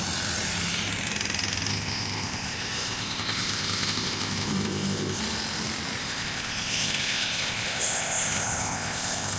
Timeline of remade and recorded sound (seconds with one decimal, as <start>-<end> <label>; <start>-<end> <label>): 0.0-1.7 recorded; 1.7-5.2 remade; 5.2-6.0 recorded; 6.0-9.4 remade